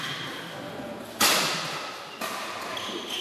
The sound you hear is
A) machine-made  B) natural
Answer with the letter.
B